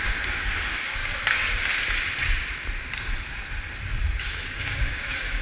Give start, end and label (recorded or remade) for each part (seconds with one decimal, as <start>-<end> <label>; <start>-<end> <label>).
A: 0.0-1.0 remade; 1.0-4.2 recorded; 4.2-5.4 remade

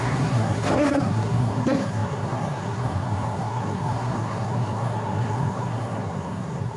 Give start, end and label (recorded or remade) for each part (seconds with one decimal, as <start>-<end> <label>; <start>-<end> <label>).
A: 0.0-6.8 remade

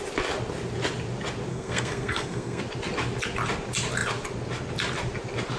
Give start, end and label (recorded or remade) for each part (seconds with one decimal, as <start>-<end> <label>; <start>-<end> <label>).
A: 0.0-1.5 recorded; 1.5-2.6 remade; 2.6-5.6 recorded